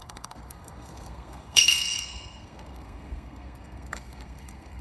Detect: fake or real fake